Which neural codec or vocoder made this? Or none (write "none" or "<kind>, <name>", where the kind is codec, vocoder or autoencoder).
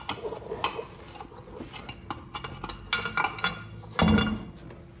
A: none